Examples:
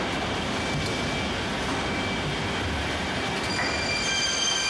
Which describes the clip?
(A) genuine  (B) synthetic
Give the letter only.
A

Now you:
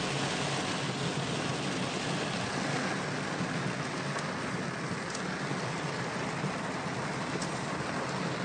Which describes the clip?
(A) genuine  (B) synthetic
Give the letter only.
A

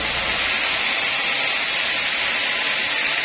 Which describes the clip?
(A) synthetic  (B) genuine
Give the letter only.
B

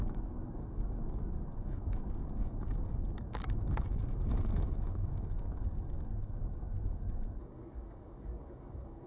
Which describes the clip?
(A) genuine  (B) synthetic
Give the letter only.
B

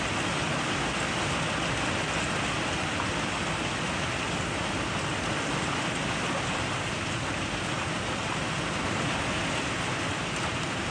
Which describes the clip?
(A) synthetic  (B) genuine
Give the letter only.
B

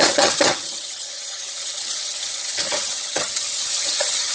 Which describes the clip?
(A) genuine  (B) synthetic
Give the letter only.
B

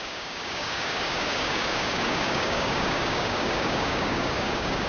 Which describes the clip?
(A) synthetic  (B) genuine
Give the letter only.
A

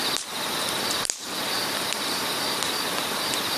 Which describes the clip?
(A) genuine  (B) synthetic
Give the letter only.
B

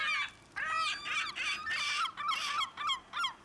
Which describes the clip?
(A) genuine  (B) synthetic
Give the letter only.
A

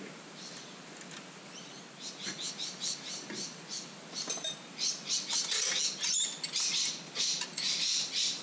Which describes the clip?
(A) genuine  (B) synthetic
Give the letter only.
A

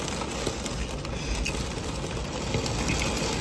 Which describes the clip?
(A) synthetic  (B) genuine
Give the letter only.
B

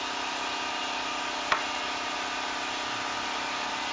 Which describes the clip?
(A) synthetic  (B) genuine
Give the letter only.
B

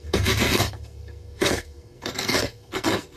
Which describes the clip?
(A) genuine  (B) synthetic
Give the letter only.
B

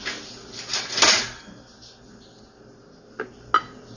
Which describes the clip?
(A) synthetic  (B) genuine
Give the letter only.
B